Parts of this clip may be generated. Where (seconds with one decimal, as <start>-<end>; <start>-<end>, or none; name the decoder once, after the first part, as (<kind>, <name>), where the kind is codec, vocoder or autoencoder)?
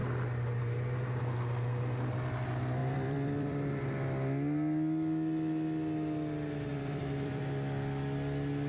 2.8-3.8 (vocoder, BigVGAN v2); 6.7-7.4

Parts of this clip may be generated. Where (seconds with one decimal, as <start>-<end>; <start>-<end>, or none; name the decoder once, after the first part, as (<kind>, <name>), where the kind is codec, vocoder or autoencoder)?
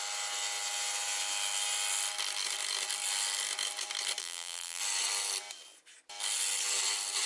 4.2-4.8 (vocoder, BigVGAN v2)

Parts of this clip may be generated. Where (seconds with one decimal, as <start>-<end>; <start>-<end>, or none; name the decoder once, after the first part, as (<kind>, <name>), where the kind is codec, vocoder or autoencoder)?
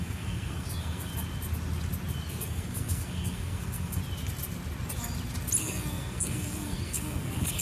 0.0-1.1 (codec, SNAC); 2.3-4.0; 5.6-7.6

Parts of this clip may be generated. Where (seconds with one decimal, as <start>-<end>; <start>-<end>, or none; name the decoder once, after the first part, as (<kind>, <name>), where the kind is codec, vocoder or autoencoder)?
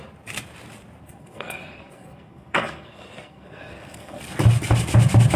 1.0-4.2 (codec, SNAC)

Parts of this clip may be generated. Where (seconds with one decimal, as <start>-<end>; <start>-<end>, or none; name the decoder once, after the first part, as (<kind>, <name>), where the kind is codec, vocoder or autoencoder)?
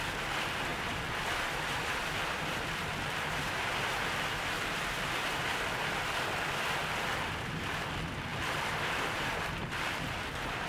0.7-3.6 (vocoder, BigVGAN v2); 8.3-9.1; 9.6-10.7